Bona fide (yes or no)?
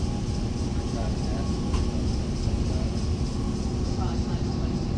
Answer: yes